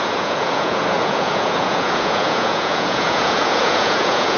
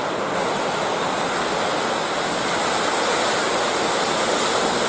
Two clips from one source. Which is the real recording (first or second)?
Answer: second